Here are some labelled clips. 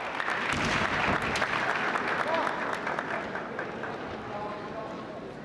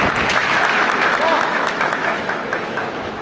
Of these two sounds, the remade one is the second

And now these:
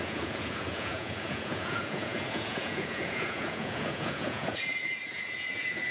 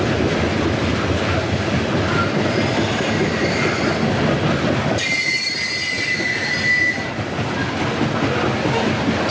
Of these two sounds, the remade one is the first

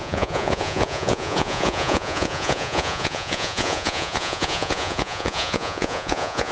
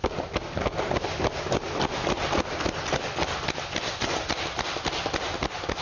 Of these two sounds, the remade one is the first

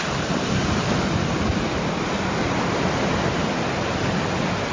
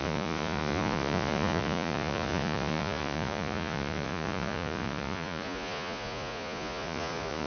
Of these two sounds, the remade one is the second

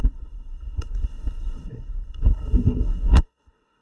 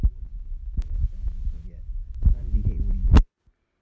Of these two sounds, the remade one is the first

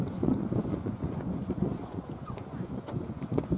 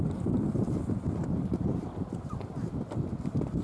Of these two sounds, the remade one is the first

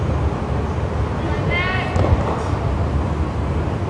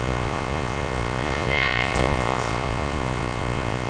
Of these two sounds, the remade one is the second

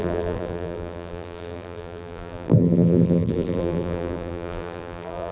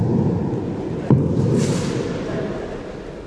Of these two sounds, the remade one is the first